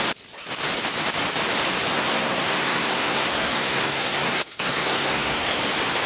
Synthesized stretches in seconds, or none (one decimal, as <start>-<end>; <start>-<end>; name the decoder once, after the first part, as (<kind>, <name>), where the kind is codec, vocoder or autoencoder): 1.9-5.6 (codec, SNAC)